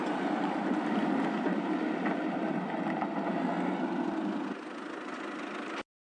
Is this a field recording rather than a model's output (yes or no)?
yes